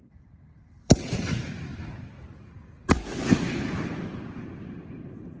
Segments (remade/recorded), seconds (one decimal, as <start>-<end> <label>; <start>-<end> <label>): 0.0-5.4 remade